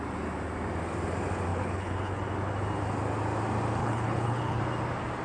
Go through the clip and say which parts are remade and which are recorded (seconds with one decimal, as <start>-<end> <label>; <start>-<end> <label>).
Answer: 0.0-1.5 recorded; 1.5-2.2 remade; 2.2-3.8 recorded; 3.8-4.6 remade; 4.6-5.2 recorded